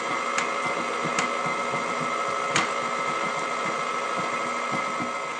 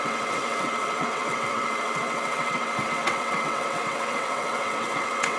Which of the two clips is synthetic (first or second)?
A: second